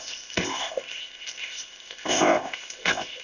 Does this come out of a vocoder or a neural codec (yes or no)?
yes